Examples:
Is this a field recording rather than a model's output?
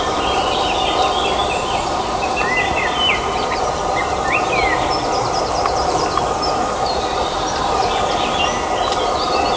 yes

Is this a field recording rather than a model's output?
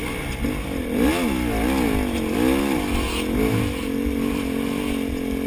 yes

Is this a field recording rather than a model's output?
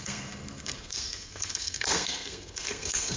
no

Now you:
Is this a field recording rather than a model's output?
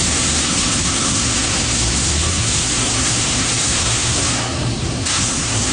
no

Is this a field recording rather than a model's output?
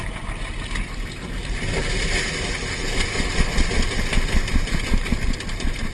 yes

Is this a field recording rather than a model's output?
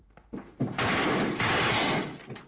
yes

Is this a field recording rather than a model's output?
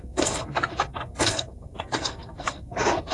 no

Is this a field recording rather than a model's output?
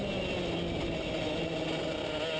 yes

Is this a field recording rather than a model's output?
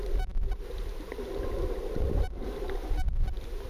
yes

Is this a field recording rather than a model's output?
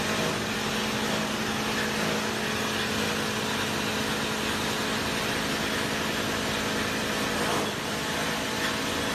yes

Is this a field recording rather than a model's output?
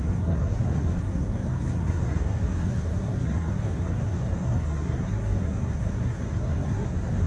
no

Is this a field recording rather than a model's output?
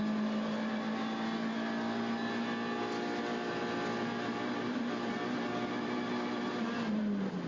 yes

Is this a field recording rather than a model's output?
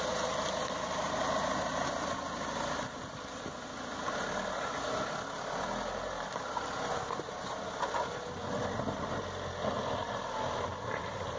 yes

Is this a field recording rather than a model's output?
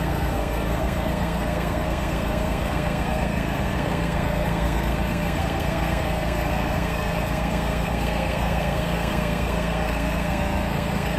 no